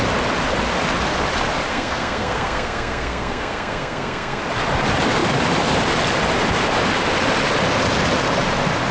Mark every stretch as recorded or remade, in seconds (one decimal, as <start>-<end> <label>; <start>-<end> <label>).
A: 0.0-1.7 recorded; 1.7-4.4 remade; 4.4-8.9 recorded